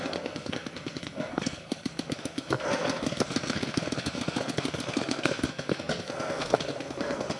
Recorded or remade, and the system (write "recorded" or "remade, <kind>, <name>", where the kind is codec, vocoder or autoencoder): remade, codec, SNAC